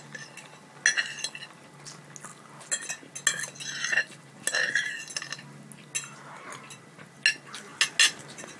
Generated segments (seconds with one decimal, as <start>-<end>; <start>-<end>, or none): none